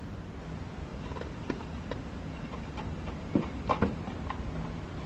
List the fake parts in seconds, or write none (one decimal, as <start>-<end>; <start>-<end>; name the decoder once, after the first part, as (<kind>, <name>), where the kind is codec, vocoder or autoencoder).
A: 0.9-4.0 (vocoder, BigVGAN v2)